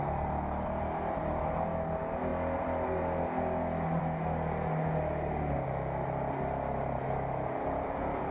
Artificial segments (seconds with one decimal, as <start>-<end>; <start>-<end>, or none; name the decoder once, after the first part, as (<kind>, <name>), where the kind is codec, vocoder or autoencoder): none

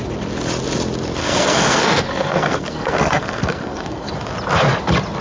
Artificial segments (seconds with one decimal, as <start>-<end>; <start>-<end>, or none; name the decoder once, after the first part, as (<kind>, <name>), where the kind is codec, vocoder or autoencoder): 1.2-4.1 (codec, SNAC)

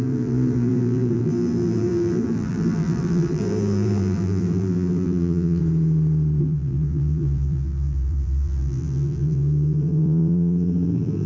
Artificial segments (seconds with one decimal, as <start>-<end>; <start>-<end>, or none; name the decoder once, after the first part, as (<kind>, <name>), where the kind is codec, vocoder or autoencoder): 0.0-5.6 (vocoder, BigVGAN v2); 6.4-11.3

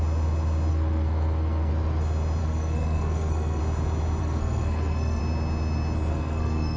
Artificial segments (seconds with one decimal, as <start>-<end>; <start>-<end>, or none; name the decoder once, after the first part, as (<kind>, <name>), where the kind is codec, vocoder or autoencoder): 0.7-1.7 (codec, SNAC); 2.4-3.6; 4.2-5.2; 6.1-6.8

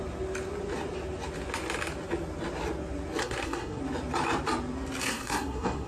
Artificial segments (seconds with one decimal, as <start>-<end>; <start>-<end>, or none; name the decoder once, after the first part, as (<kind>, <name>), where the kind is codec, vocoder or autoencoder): 3.2-3.8 (codec, SNAC); 5.0-5.9

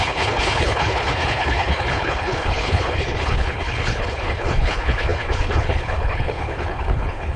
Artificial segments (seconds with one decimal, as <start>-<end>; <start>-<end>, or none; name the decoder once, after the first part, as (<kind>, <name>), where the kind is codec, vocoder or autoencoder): 0.0-7.4 (codec, HILCodec)